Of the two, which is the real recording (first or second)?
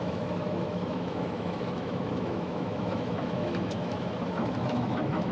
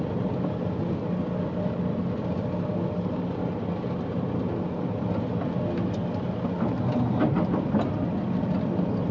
second